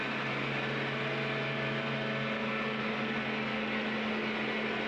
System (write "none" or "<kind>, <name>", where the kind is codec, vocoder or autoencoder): none